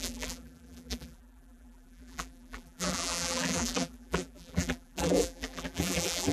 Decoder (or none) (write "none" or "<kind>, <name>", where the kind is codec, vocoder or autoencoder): vocoder, BigVGAN v2